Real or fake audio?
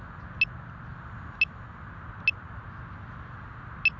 real